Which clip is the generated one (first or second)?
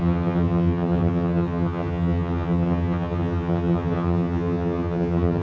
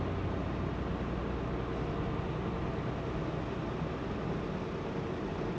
first